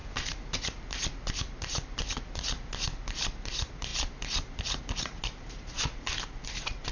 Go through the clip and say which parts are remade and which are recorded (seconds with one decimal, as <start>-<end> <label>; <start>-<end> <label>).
0.0-6.9 recorded